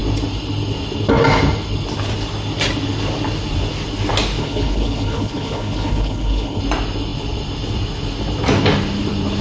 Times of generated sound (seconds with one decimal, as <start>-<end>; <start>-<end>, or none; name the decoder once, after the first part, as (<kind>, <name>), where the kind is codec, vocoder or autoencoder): 4.4-6.6 (codec, HILCodec)